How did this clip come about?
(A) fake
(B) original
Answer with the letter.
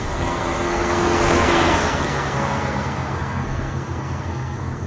A